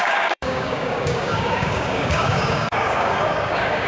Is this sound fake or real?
fake